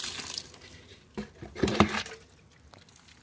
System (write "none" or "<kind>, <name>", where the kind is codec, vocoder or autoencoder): none